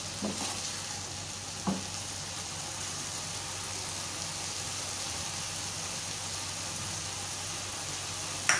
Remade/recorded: recorded